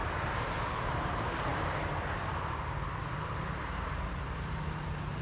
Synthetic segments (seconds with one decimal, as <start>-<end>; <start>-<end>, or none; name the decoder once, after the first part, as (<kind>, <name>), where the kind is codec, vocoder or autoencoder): none